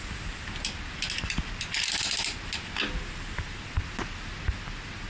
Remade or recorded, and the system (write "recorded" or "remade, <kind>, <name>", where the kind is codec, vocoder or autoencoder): recorded